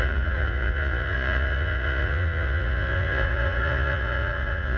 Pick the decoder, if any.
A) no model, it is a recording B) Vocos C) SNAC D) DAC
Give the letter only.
B